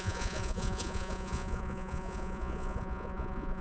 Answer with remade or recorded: remade